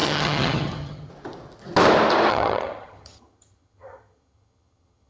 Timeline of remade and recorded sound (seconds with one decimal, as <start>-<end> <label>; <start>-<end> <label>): 0.0-1.1 remade; 1.1-2.3 recorded; 2.3-5.1 remade